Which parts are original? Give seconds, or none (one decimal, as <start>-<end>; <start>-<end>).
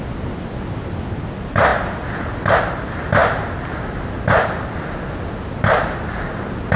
0.0-6.8